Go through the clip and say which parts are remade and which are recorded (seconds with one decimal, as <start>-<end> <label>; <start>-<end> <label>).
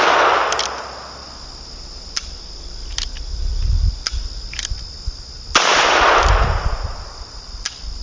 0.0-8.0 recorded